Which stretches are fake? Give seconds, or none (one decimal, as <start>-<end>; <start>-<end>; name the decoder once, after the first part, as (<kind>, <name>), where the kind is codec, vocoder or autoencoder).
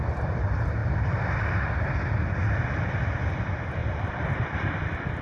0.8-1.9 (vocoder, BigVGAN v2); 3.8-4.7